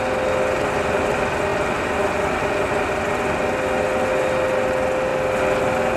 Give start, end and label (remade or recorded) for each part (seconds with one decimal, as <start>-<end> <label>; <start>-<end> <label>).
0.0-6.0 recorded